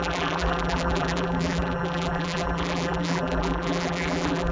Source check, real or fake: fake